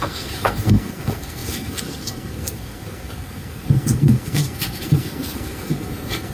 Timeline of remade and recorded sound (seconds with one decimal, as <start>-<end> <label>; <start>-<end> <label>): 0.0-6.3 remade